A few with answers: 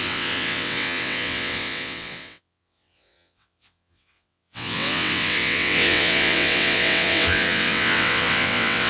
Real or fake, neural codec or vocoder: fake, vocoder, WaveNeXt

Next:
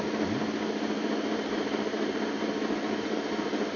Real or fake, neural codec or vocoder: real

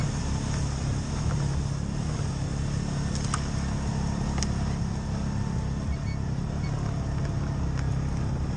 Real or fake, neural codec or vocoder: real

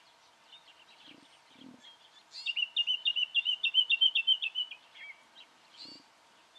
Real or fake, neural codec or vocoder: real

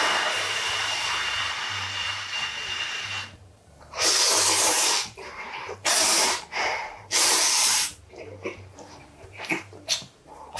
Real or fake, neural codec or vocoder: fake, vocoder, BigVGAN v2